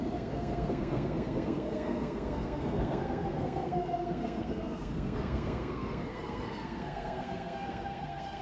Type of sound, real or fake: fake